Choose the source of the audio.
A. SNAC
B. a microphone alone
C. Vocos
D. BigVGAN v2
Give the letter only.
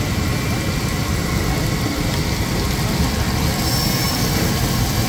B